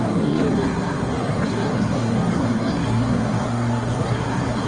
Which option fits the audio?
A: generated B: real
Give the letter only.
A